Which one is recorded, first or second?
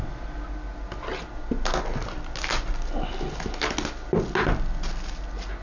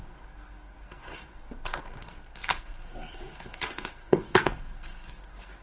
first